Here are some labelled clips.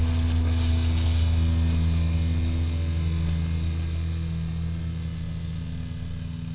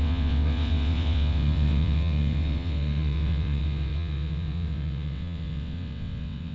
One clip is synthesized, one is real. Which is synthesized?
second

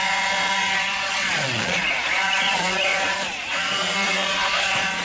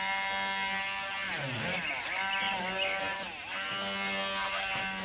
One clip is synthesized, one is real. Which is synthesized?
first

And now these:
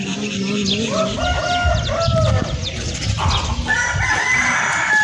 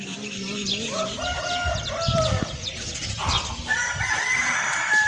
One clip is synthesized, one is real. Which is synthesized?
second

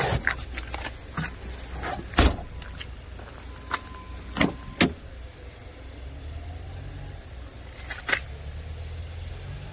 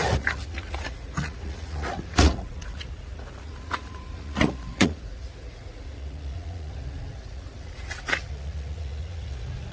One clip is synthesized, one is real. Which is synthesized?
second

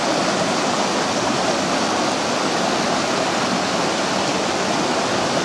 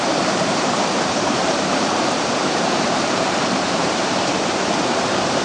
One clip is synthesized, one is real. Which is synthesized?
second